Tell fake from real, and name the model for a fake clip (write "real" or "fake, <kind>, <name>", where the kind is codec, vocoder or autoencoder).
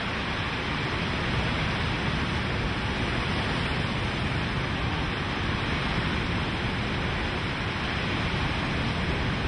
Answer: real